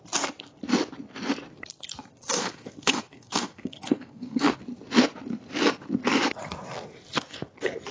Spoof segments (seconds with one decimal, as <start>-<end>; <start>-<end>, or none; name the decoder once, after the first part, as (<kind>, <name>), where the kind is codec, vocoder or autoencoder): 2.4-4.6 (codec, SNAC)